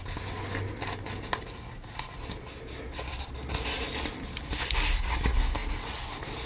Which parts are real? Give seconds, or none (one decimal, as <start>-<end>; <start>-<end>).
0.0-6.5